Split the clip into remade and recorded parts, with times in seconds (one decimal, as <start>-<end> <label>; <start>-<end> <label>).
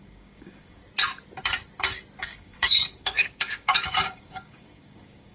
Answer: 0.0-0.8 remade; 0.8-2.2 recorded; 2.2-5.3 remade